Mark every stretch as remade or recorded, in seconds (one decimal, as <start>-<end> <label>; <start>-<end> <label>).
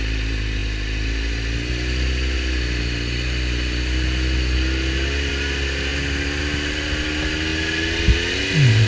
0.0-8.9 recorded